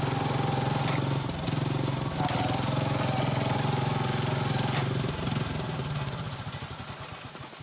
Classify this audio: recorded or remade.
recorded